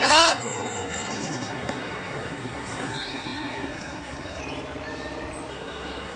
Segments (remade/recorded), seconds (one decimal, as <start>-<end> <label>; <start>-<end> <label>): 0.0-4.4 remade; 4.4-5.5 recorded; 5.5-6.2 remade